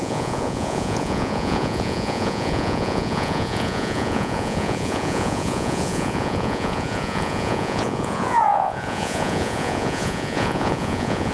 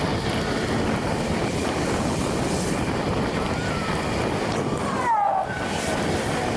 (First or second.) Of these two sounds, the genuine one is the second